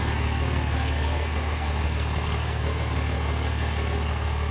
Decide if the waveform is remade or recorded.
remade